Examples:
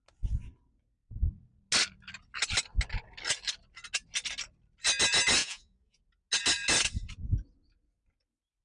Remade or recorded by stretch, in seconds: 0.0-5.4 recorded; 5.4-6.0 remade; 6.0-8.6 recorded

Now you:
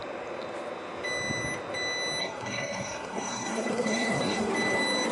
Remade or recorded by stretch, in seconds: 0.0-2.2 recorded; 2.2-4.5 remade; 4.5-5.1 recorded